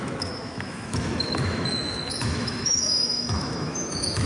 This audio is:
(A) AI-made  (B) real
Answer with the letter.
A